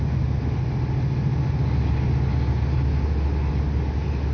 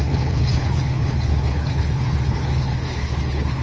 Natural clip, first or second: first